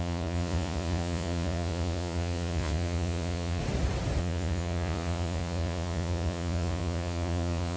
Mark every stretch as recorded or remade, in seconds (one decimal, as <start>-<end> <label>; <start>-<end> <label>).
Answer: 0.0-3.6 remade; 3.6-4.2 recorded; 4.2-7.8 remade